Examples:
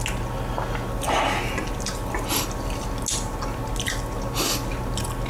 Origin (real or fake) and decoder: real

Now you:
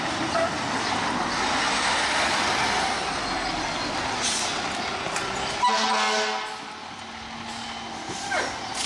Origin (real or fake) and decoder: real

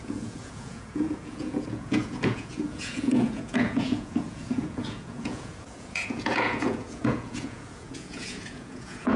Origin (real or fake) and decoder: fake, vocoder, Vocos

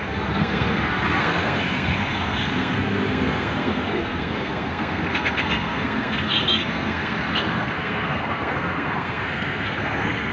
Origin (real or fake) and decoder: fake, codec, SNAC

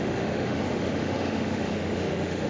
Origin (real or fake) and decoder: fake, autoencoder, DAC-VAE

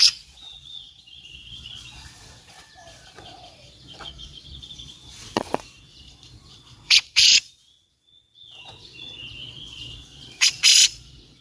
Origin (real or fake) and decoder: fake, vocoder, Vocos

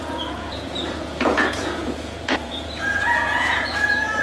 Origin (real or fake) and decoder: fake, vocoder, Vocos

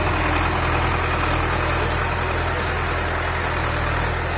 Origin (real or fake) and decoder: real